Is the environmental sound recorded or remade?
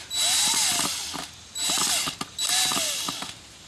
recorded